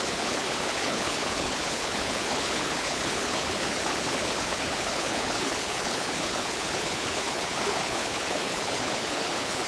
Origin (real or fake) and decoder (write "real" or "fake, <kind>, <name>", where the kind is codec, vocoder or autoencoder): fake, codec, HILCodec